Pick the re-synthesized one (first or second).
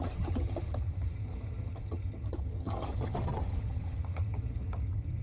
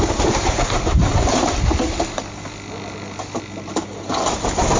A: first